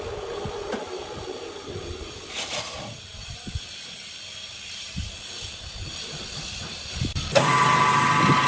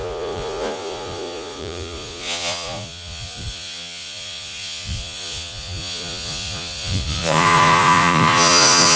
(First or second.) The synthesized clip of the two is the second